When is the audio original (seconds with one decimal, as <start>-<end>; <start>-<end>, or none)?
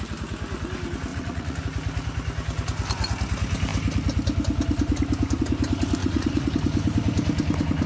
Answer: 0.0-1.1; 1.6-6.0; 6.5-7.9